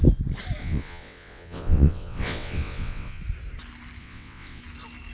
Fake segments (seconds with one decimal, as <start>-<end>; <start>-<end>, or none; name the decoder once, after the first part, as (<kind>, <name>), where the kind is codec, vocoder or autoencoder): 0.6-3.2 (vocoder, WaveNeXt); 4.0-4.6